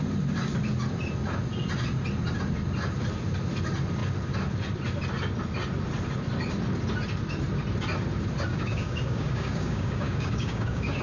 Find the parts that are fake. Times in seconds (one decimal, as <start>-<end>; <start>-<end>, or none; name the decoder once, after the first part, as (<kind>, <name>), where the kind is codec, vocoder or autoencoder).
8.5-11.0 (codec, DAC)